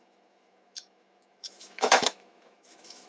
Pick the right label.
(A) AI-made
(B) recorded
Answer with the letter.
A